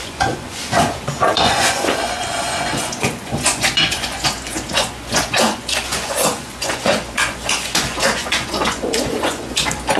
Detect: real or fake fake